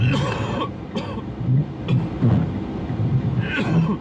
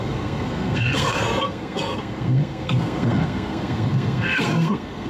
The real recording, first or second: first